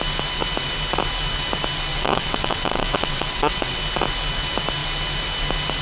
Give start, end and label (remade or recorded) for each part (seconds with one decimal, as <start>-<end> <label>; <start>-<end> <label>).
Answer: 0.0-1.9 recorded; 1.9-3.8 remade; 3.8-5.8 recorded